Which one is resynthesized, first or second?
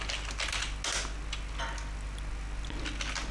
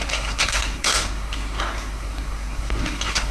second